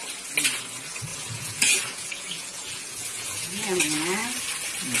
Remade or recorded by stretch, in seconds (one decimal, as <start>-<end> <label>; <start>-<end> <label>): 0.0-1.1 recorded; 1.1-3.8 remade; 3.8-5.0 recorded